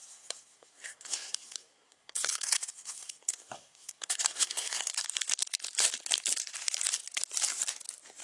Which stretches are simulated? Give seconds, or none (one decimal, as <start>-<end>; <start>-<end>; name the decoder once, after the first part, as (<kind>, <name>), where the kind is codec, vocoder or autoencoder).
0.0-4.9 (codec, SNAC)